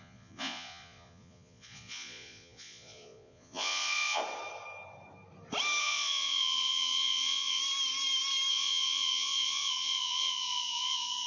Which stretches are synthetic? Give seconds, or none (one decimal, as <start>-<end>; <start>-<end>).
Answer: 0.0-4.2; 5.8-7.6; 8.5-11.3